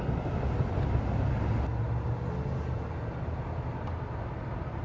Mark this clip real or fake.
real